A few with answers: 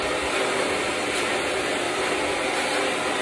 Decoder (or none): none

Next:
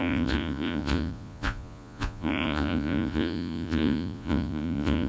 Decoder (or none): vocoder, Vocos